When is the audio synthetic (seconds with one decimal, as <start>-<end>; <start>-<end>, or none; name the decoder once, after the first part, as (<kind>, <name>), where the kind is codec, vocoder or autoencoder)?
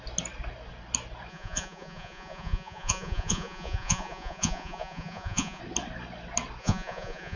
1.3-5.6 (vocoder, Vocos); 6.6-7.4